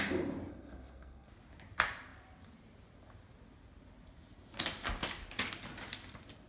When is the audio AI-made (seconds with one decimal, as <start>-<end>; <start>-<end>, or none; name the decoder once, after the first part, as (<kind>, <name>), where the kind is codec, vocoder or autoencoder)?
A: 0.5-1.3 (codec, SNAC)